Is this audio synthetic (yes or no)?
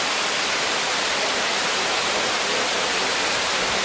no